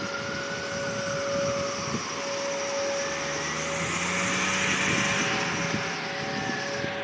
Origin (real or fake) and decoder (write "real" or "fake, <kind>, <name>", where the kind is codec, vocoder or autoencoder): real